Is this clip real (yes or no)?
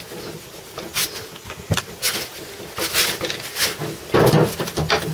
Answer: yes